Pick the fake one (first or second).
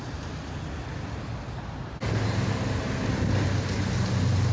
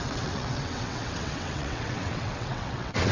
second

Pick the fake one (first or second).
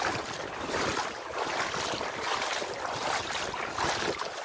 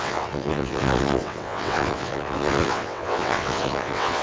second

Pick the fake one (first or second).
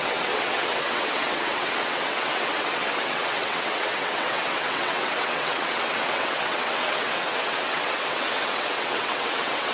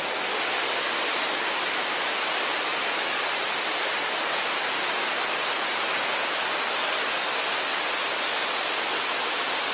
first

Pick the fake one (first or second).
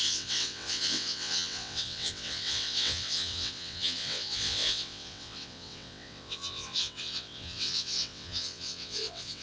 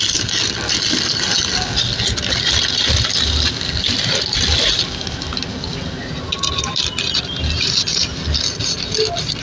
first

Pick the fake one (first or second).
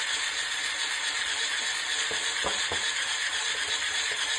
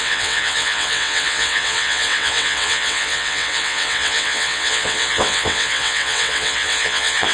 second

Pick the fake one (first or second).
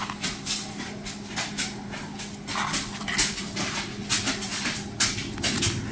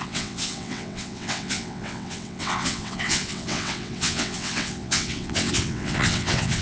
second